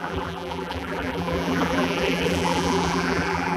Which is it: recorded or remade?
remade